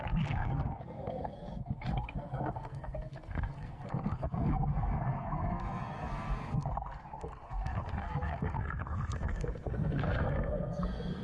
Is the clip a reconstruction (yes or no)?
yes